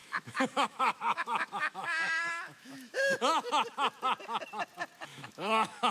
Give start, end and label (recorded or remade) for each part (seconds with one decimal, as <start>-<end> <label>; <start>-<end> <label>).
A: 0.0-3.5 remade; 3.5-5.1 recorded; 5.1-5.9 remade